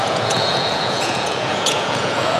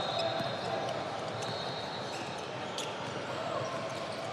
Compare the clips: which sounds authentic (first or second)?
second